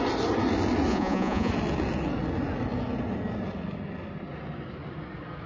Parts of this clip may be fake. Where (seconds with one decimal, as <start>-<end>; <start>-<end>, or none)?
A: 0.9-1.5

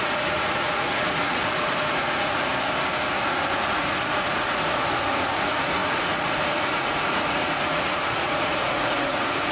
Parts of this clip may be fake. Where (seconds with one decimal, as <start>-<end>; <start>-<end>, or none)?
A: 0.0-2.5; 3.1-9.5